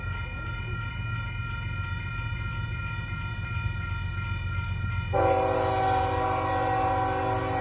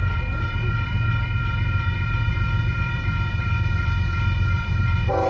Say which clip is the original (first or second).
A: first